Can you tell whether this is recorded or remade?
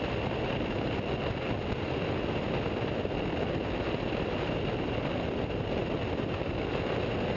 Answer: recorded